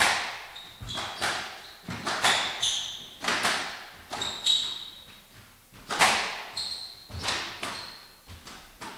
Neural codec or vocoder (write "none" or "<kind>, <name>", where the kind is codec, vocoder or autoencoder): none